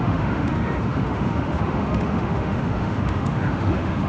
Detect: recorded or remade remade